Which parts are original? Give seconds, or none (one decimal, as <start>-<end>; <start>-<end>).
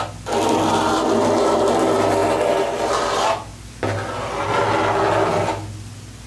0.0-6.3